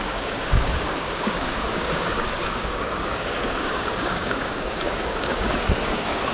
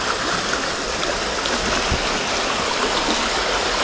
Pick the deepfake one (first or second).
first